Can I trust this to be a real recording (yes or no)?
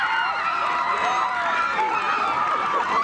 yes